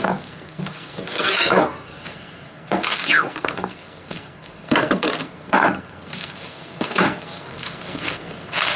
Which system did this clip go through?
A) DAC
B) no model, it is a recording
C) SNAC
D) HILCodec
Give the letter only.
C